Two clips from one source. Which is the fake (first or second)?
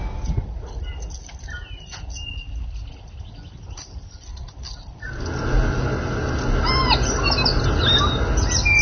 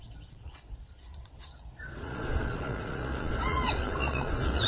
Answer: second